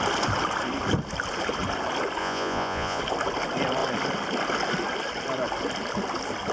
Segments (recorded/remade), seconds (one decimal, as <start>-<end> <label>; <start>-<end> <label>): 0.0-2.2 recorded; 2.2-3.0 remade; 3.0-6.5 recorded